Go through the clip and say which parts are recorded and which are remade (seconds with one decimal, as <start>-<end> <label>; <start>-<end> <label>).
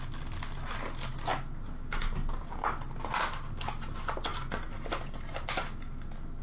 0.0-6.4 recorded